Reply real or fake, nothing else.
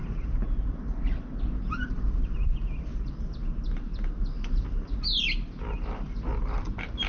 real